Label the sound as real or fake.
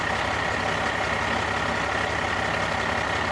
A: real